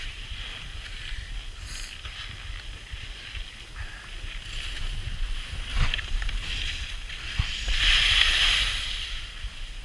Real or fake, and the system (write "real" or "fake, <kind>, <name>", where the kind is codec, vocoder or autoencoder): real